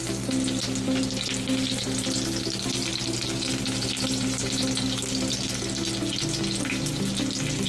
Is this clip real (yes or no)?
yes